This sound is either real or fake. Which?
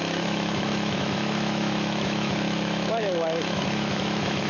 fake